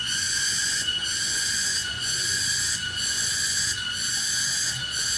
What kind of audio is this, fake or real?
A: fake